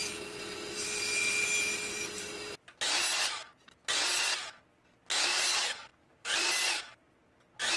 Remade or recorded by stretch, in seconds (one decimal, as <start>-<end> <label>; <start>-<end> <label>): 0.0-5.9 recorded; 5.9-6.8 remade; 6.8-7.8 recorded

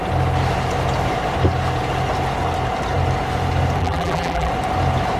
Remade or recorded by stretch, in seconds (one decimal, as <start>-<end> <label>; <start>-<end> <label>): 0.0-3.8 recorded; 3.8-4.5 remade; 4.5-5.2 recorded

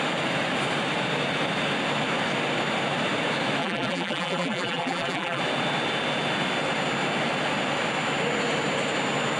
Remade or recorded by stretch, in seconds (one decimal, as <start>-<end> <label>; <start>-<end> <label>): 0.0-3.6 recorded; 3.6-5.4 remade; 5.4-9.4 recorded